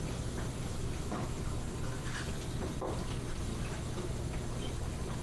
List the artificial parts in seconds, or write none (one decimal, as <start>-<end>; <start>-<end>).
0.7-1.6; 3.5-4.3